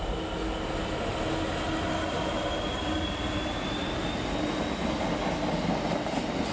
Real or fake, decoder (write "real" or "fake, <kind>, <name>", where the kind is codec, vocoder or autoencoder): real